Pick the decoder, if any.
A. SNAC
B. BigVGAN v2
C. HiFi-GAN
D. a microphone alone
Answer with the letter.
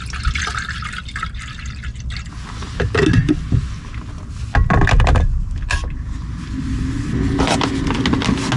D